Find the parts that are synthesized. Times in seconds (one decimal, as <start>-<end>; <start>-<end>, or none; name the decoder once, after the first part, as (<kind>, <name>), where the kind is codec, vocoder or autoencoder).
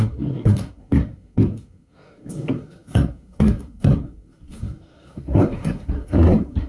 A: 0.0-6.7 (codec, SNAC)